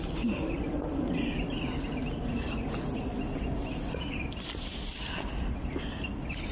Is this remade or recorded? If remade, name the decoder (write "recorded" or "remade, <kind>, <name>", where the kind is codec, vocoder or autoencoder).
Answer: recorded